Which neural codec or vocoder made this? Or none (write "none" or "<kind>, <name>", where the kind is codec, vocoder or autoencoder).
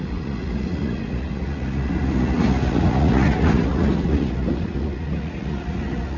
vocoder, Vocos